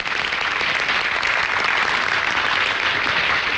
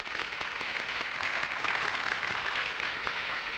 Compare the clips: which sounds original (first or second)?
first